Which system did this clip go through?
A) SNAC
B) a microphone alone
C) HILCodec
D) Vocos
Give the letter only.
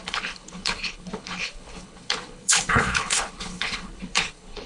C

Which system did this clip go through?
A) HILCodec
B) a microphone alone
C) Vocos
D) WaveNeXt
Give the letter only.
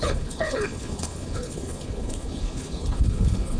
A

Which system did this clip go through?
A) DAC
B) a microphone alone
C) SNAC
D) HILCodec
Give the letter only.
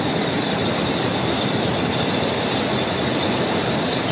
B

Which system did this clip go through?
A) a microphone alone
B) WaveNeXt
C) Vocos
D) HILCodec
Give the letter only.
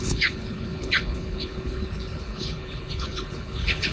D